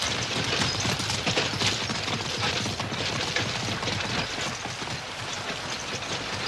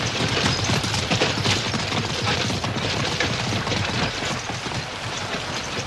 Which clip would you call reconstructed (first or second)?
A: second